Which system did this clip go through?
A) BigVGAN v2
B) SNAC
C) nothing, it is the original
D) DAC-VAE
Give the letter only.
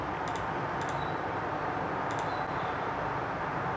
C